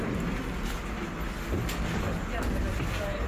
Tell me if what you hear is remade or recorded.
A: recorded